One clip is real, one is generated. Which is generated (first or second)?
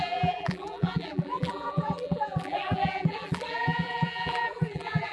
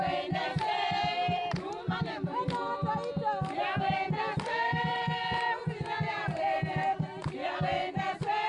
first